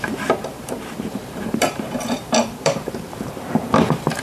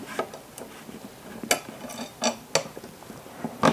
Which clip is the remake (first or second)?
first